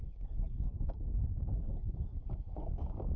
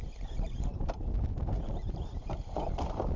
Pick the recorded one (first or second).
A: second